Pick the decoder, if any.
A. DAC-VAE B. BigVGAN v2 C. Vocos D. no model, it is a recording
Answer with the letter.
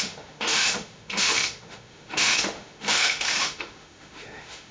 A